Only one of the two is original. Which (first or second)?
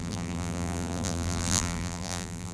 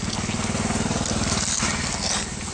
second